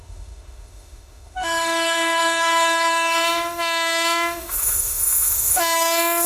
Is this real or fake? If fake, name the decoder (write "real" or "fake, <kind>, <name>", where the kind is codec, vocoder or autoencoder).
fake, autoencoder, DAC-VAE